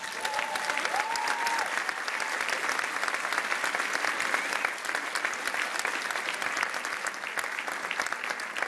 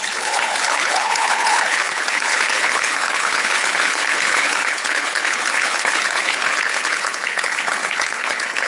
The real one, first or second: first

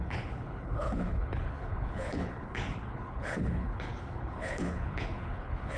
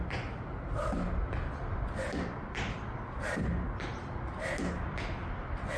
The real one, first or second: second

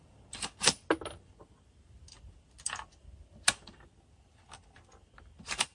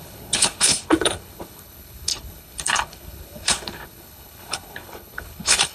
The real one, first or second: first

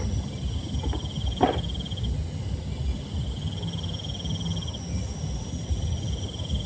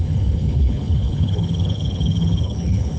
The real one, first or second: first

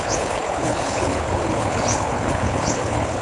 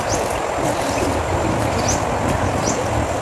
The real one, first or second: second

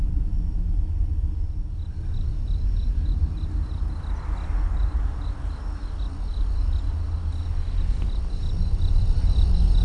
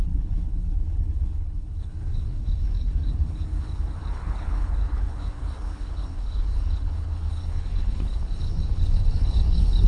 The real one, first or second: first